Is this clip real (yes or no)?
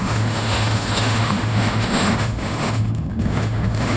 no